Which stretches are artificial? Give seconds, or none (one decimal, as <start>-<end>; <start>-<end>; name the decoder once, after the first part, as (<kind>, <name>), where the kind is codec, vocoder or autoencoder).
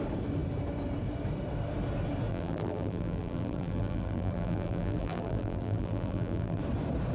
2.3-6.6 (vocoder, BigVGAN v2)